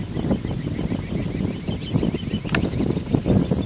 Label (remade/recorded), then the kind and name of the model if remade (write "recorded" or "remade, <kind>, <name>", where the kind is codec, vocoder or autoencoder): recorded